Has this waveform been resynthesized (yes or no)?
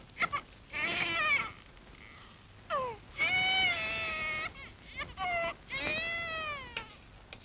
no